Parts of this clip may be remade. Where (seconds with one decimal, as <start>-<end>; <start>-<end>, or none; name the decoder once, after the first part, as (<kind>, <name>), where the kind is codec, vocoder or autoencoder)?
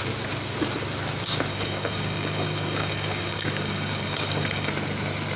1.5-4.7 (codec, DAC)